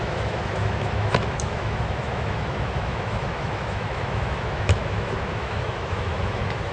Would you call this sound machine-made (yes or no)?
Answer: yes